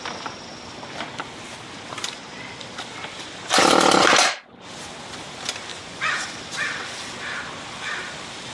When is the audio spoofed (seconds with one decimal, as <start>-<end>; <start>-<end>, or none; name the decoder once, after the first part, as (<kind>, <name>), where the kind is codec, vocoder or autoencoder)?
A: 5.7-6.3 (vocoder, Vocos)